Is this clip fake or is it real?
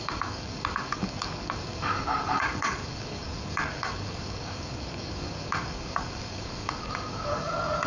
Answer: fake